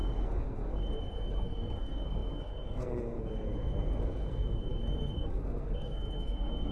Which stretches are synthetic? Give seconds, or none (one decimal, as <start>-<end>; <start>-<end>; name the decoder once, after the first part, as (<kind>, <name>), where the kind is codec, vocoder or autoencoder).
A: 0.0-6.7 (codec, SNAC)